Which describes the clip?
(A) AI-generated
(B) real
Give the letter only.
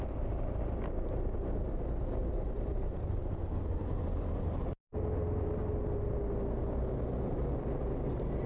B